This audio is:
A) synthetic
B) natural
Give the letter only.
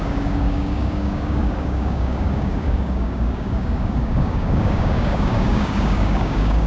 A